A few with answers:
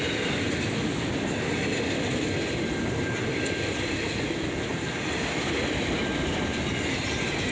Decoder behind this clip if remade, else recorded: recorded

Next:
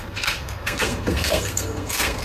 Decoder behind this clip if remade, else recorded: remade, codec, SNAC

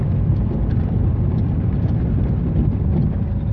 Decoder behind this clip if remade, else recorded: recorded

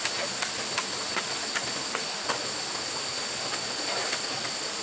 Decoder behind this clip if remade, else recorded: recorded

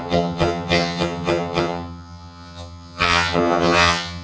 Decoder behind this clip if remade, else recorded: remade, vocoder, HiFi-GAN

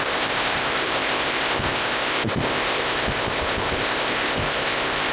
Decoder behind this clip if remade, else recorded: remade, codec, ZipCodec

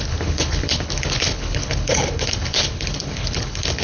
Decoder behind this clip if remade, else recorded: remade, codec, HILCodec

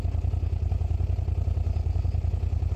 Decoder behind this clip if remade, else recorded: recorded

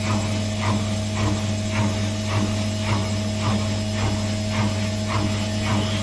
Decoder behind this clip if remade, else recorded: recorded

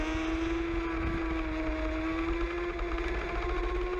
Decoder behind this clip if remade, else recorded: recorded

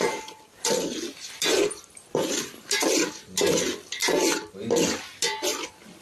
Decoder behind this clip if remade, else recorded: recorded